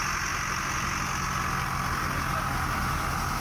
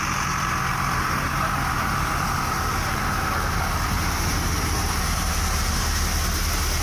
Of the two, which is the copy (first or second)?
second